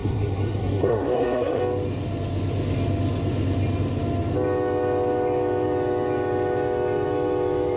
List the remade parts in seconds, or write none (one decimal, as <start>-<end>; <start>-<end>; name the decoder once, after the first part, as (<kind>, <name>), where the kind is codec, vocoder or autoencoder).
0.0-1.6 (codec, SNAC)